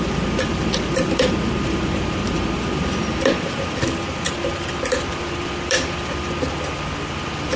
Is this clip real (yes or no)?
no